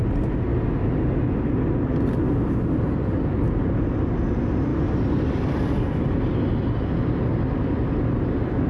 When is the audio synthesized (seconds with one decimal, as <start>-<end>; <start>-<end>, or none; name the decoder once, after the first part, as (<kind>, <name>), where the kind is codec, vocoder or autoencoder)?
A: none